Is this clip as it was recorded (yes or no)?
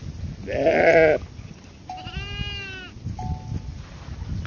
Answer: yes